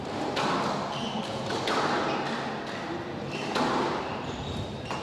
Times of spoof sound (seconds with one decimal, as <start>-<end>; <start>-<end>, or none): none